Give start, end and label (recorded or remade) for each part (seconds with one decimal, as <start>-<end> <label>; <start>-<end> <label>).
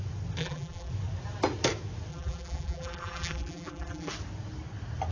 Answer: 0.0-0.4 recorded; 0.4-0.9 remade; 0.9-2.1 recorded; 2.1-4.1 remade; 4.1-5.1 recorded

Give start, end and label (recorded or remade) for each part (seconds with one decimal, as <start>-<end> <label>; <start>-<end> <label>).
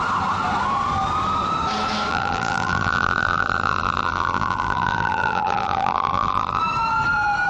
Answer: 0.0-2.1 recorded; 2.1-6.6 remade; 6.6-7.5 recorded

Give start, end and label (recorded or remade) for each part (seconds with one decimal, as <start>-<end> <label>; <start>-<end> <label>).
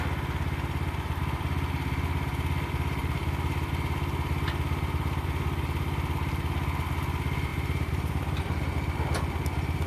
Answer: 0.0-3.0 recorded; 3.0-3.7 remade; 3.7-7.5 recorded; 7.5-8.7 remade; 8.7-9.9 recorded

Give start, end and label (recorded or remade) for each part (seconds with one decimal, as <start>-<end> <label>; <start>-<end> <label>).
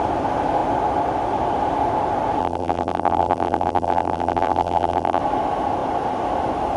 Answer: 0.0-2.4 recorded; 2.4-5.2 remade; 5.2-6.8 recorded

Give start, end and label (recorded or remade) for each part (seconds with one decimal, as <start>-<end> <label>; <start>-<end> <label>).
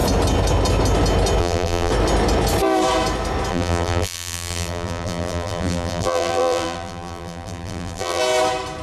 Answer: 0.0-1.4 recorded; 1.4-1.9 remade; 1.9-3.5 recorded; 3.5-8.2 remade; 8.2-8.8 recorded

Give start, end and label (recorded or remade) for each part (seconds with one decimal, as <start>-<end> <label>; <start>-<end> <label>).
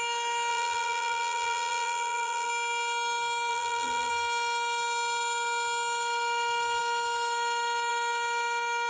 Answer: 0.0-0.5 recorded; 0.5-2.5 remade; 2.5-3.5 recorded; 3.5-4.1 remade; 4.1-8.9 recorded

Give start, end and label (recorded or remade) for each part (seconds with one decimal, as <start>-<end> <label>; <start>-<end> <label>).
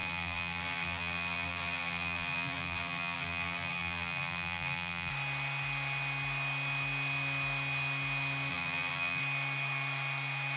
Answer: 0.0-5.1 remade; 5.1-8.5 recorded; 8.5-9.2 remade; 9.2-10.6 recorded